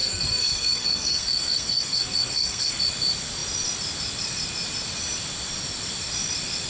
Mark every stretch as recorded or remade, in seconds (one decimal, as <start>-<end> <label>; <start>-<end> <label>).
0.0-2.8 remade; 2.8-6.7 recorded